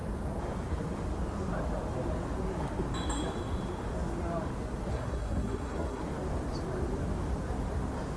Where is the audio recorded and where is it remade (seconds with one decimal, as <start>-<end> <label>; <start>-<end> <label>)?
0.0-4.9 recorded; 4.9-6.0 remade; 6.0-8.2 recorded